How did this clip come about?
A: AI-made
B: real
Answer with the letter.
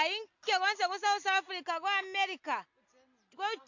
B